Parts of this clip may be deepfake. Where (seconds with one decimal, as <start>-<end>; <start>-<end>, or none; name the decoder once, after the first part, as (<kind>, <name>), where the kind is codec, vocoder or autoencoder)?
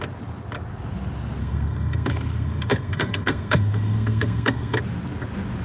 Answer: 1.4-4.8 (codec, SNAC)